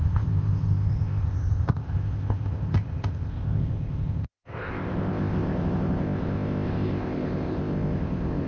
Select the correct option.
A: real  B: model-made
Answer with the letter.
B